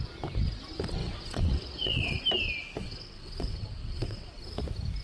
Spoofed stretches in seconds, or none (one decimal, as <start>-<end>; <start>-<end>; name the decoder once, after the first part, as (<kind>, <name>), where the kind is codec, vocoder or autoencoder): 1.0-2.2 (vocoder, WaveNeXt); 2.8-4.4